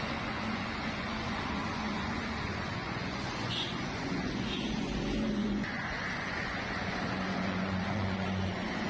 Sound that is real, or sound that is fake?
fake